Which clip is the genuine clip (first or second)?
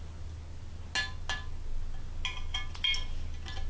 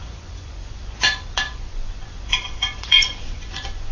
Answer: first